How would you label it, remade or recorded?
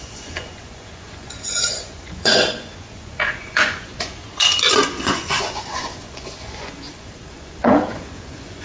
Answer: remade